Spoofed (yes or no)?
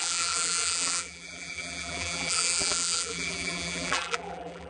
yes